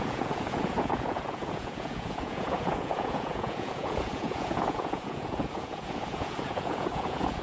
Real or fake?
fake